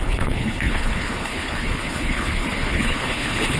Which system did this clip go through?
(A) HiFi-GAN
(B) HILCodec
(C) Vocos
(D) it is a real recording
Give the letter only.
B